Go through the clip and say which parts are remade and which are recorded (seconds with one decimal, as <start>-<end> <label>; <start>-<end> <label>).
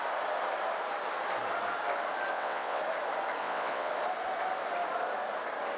0.0-2.3 recorded; 2.3-2.8 remade; 2.8-3.4 recorded; 3.4-3.9 remade; 3.9-5.8 recorded